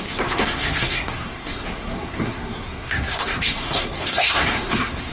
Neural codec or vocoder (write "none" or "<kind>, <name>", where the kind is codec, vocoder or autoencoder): codec, SNAC